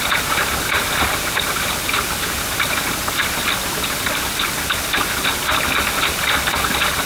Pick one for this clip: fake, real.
real